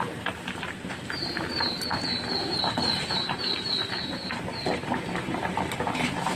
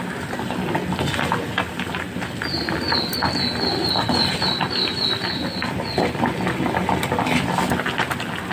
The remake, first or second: first